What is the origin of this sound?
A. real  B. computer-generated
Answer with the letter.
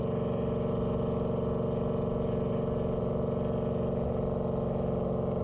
A